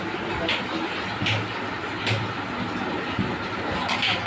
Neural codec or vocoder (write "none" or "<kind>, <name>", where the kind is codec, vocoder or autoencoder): none